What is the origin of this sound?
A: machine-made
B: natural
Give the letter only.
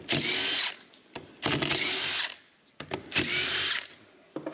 B